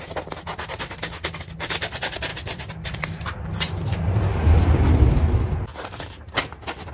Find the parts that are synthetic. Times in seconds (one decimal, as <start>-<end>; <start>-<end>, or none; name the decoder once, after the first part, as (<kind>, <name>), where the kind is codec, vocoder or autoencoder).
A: 2.3-5.0 (vocoder, BigVGAN v2)